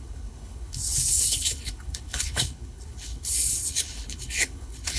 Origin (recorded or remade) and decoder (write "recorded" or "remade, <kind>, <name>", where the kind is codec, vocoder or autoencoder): remade, codec, HILCodec